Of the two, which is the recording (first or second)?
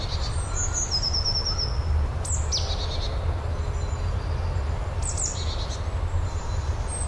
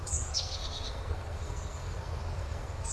first